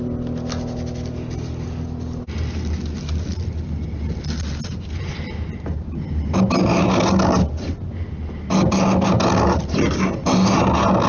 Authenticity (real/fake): real